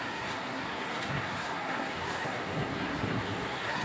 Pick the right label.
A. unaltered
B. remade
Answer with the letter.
B